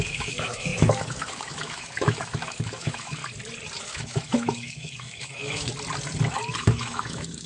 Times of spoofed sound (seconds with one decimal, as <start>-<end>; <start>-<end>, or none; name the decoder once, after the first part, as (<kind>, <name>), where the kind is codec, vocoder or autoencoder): 0.0-3.2 (autoencoder, DAC-VAE); 3.8-5.7; 6.6-7.5